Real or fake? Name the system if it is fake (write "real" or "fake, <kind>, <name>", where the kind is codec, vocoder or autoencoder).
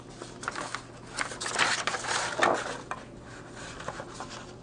real